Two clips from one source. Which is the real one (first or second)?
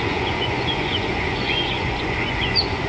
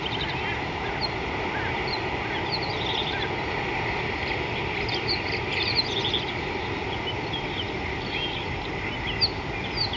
second